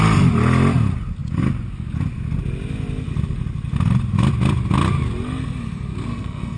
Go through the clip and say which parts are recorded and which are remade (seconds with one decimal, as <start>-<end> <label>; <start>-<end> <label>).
0.0-6.1 recorded; 6.1-6.6 remade